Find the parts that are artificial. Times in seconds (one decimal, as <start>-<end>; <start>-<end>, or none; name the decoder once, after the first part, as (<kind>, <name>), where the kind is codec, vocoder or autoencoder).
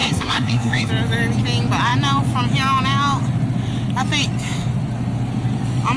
0.0-0.9 (codec, SNAC)